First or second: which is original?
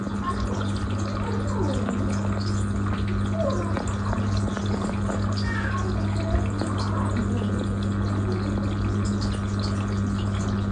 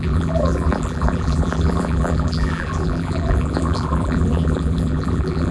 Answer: first